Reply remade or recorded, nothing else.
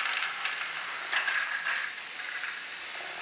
recorded